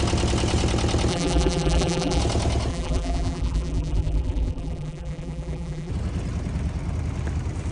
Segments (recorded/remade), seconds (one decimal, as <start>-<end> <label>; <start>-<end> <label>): 0.0-1.1 recorded; 1.1-2.2 remade; 2.2-2.7 recorded; 2.7-5.9 remade; 5.9-7.7 recorded